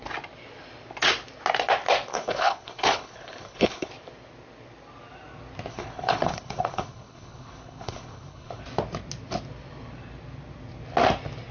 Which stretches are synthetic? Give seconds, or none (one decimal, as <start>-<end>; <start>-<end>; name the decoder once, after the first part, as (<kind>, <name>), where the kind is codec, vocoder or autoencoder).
2.1-3.9 (codec, HILCodec); 5.7-8.6